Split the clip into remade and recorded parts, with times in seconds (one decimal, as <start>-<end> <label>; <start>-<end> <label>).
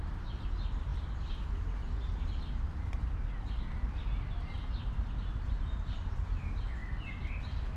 0.0-7.8 recorded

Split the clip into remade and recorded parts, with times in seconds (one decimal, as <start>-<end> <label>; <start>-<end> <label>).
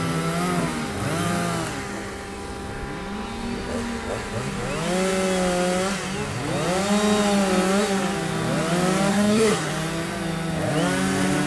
0.0-9.1 recorded; 9.1-9.7 remade; 9.7-11.5 recorded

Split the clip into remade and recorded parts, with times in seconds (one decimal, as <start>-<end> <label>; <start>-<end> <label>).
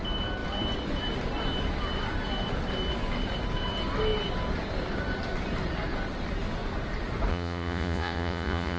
0.0-7.3 recorded; 7.3-8.8 remade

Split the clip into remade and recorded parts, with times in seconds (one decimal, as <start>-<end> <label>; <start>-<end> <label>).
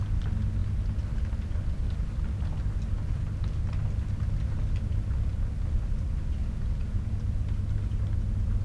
0.0-6.4 recorded; 6.4-7.1 remade; 7.1-8.6 recorded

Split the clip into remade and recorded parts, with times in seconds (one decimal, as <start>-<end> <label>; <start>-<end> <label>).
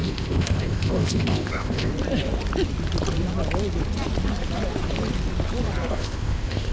0.0-1.9 remade; 1.9-5.9 recorded; 5.9-6.7 remade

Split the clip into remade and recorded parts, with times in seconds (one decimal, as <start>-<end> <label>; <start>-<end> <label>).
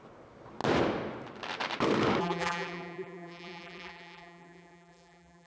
0.0-2.2 recorded; 2.2-5.5 remade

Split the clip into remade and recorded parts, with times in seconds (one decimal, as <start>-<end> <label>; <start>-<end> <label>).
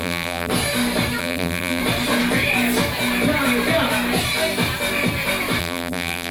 0.0-0.5 remade; 0.5-1.2 recorded; 1.2-1.8 remade; 1.8-5.6 recorded; 5.6-6.3 remade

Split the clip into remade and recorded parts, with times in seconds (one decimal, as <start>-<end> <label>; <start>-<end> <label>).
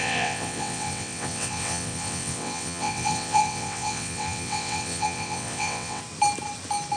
0.0-6.0 remade; 6.0-7.0 recorded